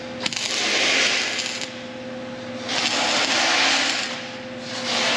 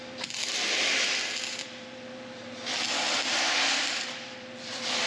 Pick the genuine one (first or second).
first